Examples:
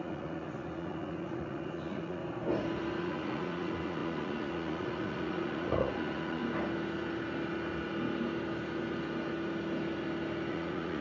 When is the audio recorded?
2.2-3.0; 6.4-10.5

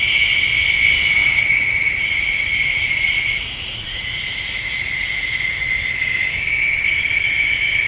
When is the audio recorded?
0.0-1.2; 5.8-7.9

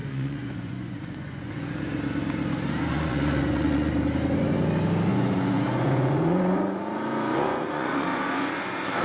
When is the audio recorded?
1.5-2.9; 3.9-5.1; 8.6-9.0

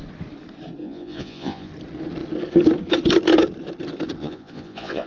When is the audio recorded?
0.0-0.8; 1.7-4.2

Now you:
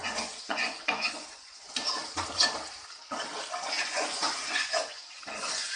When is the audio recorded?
2.0-3.7

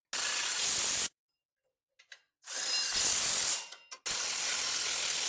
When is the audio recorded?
0.0-5.3